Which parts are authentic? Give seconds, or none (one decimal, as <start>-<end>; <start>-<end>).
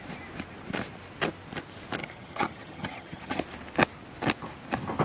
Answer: 0.0-2.0; 3.4-5.0